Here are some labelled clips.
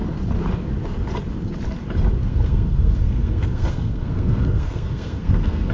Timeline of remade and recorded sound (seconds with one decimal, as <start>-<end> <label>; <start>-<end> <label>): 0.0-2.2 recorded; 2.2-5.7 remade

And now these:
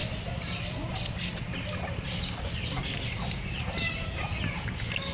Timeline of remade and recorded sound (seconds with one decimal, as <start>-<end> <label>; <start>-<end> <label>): 0.0-5.1 recorded

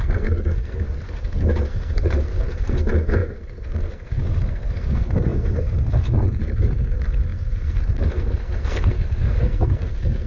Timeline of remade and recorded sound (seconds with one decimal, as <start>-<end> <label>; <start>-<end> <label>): 0.0-10.3 remade

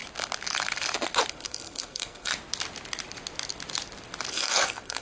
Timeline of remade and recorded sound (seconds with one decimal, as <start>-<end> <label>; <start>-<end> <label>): 0.0-1.3 recorded; 1.3-2.3 remade; 2.3-4.3 recorded; 4.3-5.0 remade